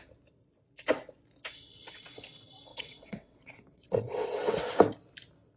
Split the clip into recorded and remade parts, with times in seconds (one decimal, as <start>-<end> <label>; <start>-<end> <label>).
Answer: 0.0-2.7 recorded; 2.7-4.7 remade; 4.7-5.6 recorded